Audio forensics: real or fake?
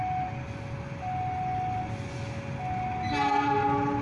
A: real